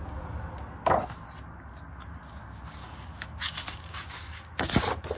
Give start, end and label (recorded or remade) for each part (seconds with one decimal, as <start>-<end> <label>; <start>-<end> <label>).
0.0-2.4 recorded; 2.4-4.7 remade; 4.7-5.2 recorded